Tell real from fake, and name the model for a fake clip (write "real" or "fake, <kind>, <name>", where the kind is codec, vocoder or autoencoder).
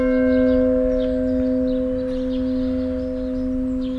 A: real